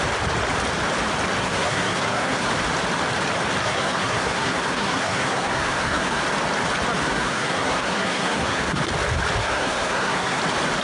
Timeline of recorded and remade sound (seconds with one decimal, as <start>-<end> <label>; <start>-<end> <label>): 0.0-1.4 recorded; 1.4-2.5 remade; 2.5-3.6 recorded; 3.6-6.2 remade; 6.2-7.0 recorded; 7.0-8.8 remade; 8.8-9.4 recorded; 9.4-10.4 remade; 10.4-10.8 recorded